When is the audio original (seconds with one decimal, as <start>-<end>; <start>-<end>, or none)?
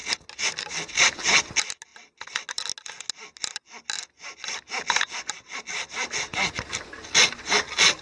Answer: 0.0-8.0